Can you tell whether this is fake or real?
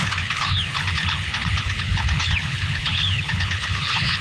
fake